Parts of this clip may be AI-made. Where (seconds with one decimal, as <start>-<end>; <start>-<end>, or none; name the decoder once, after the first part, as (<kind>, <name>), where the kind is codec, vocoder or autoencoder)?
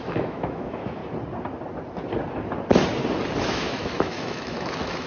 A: 0.0-1.0 (autoencoder, DAC-VAE); 3.4-5.1